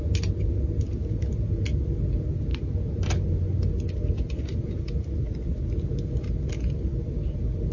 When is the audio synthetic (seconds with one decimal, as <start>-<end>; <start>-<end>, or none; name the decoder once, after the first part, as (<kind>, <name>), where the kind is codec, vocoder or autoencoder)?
none